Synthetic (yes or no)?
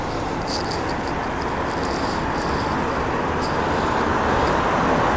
no